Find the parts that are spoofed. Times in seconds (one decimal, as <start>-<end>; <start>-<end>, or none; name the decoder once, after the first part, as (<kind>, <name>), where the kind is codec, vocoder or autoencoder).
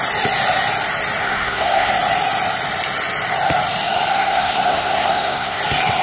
1.2-1.9 (codec, SNAC); 4.1-5.6